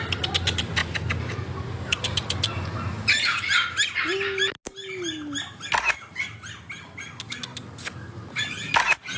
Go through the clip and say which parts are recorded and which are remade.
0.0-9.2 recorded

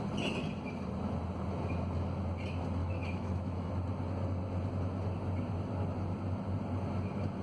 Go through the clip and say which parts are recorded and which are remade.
0.0-2.8 recorded; 2.8-3.7 remade; 3.7-7.4 recorded

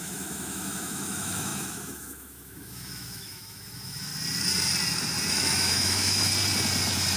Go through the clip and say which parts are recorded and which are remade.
0.0-4.1 remade; 4.1-5.3 recorded; 5.3-6.3 remade; 6.3-7.2 recorded

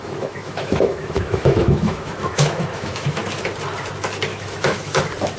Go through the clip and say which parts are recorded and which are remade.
0.0-3.2 remade; 3.2-4.3 recorded; 4.3-5.0 remade; 5.0-5.4 recorded

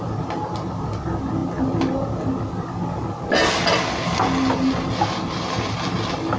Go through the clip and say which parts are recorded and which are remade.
0.0-6.4 recorded